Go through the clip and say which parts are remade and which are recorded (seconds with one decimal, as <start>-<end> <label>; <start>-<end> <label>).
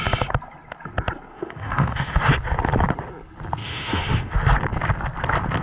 0.0-1.3 recorded; 1.3-2.2 remade; 2.2-3.6 recorded; 3.6-4.3 remade; 4.3-5.6 recorded